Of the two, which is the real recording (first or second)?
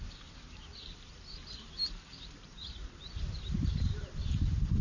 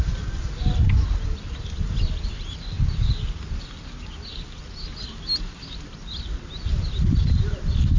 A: second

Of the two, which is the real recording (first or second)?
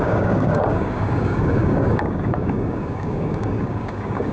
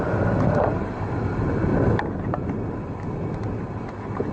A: second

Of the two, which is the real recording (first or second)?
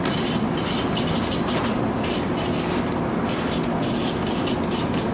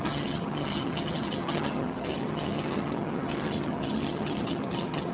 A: first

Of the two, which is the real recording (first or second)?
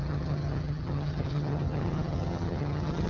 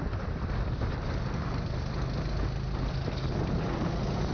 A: second